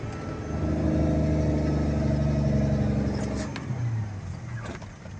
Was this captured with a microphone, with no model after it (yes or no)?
yes